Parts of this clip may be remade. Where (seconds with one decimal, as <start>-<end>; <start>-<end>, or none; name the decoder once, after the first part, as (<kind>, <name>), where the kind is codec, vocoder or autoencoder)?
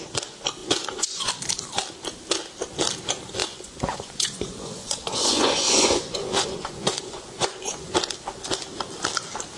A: 0.6-1.3 (vocoder, Vocos); 3.4-7.9